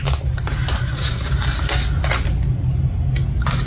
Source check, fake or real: real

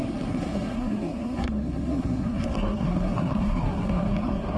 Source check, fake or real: fake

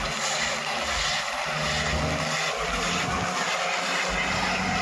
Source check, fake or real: real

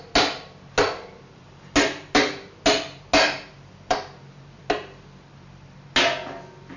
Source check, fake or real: real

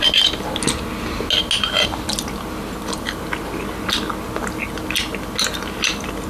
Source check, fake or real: real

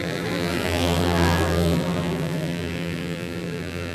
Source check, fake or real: fake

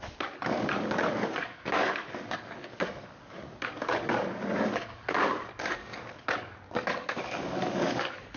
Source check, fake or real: fake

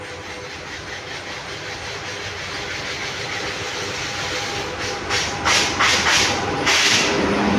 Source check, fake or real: real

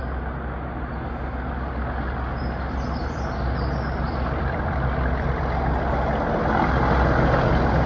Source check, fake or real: real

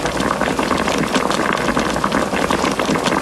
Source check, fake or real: real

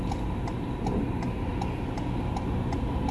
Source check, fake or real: real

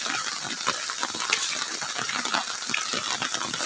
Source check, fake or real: real